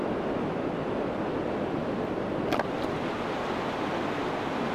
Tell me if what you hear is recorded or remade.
recorded